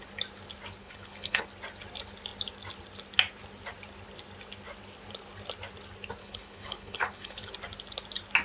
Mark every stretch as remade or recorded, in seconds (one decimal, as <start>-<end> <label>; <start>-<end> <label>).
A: 0.0-0.8 recorded; 0.8-1.4 remade; 1.4-6.2 recorded; 6.2-7.5 remade; 7.5-8.4 recorded